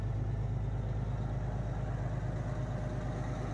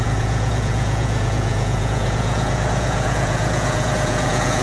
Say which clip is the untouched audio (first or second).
first